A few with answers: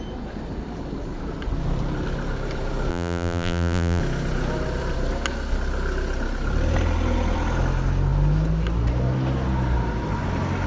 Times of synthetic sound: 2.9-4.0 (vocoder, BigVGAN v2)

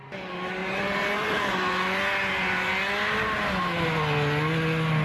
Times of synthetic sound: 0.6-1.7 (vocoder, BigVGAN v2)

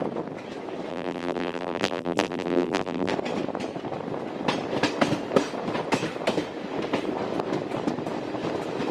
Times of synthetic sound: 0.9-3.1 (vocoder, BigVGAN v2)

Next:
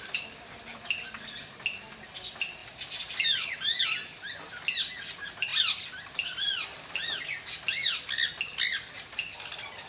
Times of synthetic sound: 2.6-3.8 (vocoder, BigVGAN v2); 5.5-7.2

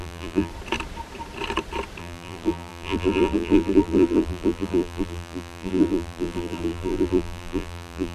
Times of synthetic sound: 0.0-0.5 (vocoder, BigVGAN v2); 2.0-8.1